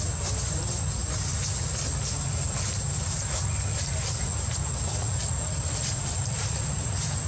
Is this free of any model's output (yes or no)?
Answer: yes